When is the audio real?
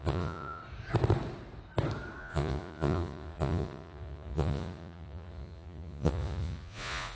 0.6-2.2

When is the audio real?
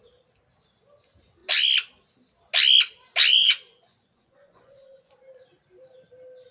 0.0-3.4; 5.1-6.5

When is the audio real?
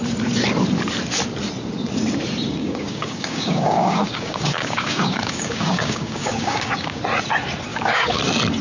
0.0-2.6; 7.0-7.7; 8.2-8.6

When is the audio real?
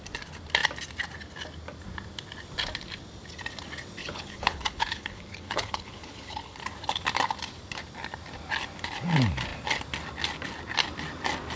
0.0-4.0; 6.6-11.6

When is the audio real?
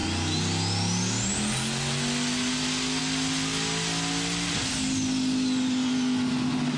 0.0-6.8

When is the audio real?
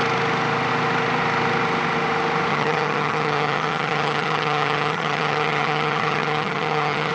0.0-2.5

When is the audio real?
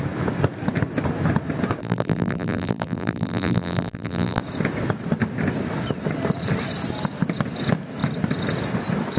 0.0-1.8; 4.4-9.2